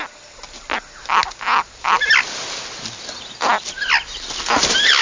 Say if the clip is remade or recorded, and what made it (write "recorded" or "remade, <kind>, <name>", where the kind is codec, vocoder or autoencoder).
recorded